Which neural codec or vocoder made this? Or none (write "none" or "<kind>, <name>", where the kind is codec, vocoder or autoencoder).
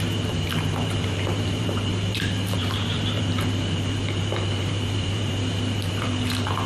vocoder, BigVGAN v2